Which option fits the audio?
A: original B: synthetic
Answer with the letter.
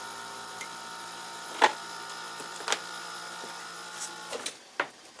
A